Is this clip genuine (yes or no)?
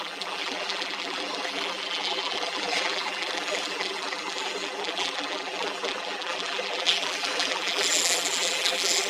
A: no